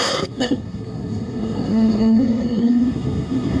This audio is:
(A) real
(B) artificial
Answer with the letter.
B